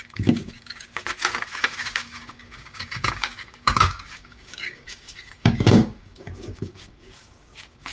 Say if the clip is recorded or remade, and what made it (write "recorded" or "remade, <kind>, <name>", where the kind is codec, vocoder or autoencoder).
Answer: remade, codec, DAC